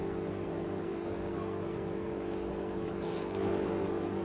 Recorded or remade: remade